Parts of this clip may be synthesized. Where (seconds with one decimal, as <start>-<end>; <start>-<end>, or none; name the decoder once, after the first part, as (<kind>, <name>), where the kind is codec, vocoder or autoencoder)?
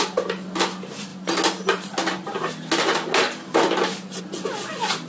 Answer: none